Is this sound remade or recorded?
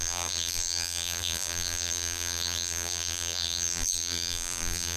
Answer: remade